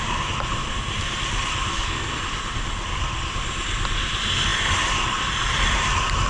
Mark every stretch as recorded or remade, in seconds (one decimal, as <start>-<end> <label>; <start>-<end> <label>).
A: 0.0-1.7 recorded; 1.7-2.2 remade; 2.2-6.3 recorded